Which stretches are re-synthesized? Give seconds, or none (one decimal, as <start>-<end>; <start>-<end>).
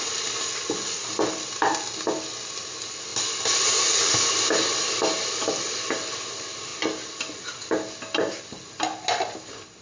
none